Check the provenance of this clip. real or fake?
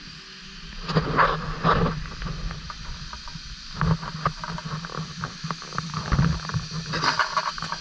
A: real